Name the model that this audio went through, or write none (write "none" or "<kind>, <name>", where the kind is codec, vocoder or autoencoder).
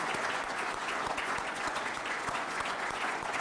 vocoder, Vocos